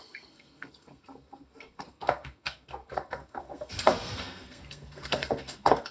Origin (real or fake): fake